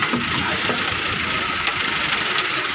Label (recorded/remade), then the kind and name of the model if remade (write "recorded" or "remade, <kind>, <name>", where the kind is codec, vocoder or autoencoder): recorded